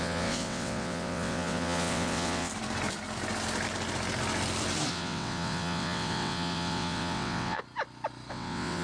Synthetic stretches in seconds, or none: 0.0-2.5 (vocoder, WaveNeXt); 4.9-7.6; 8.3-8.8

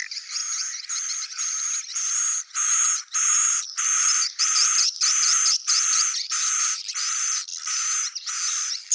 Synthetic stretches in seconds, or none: 0.0-7.5 (vocoder, BigVGAN v2); 8.0-8.9